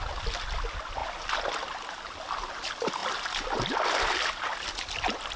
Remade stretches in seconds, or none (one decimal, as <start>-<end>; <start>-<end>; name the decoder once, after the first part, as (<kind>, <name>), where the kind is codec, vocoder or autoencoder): none